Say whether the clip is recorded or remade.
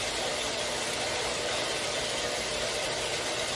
recorded